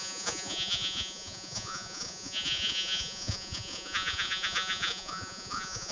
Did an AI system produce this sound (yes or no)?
yes